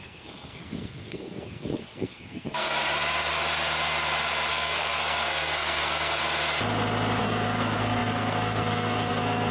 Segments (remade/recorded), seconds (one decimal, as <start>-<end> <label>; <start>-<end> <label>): 0.0-2.7 remade; 2.7-4.5 recorded; 4.5-6.2 remade; 6.2-7.2 recorded; 7.2-9.5 remade